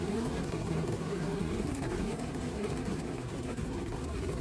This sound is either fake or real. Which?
fake